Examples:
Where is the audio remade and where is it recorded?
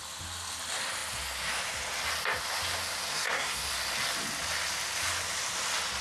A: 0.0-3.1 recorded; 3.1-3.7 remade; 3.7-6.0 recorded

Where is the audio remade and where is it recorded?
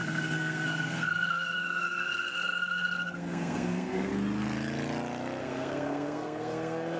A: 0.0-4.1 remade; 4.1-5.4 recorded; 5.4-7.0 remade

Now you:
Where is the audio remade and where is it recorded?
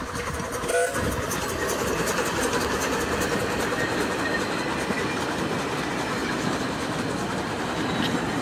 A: 0.0-8.4 recorded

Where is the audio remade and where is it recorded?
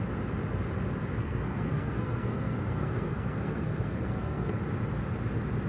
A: 0.0-1.2 recorded; 1.2-4.6 remade; 4.6-5.7 recorded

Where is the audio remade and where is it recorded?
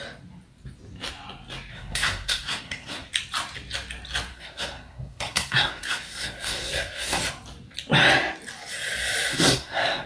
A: 0.0-1.7 recorded; 1.7-3.1 remade; 3.1-4.3 recorded; 4.3-7.2 remade; 7.2-9.3 recorded; 9.3-10.1 remade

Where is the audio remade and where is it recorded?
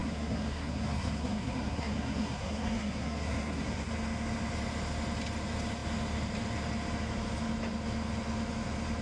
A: 0.0-3.9 remade; 3.9-9.0 recorded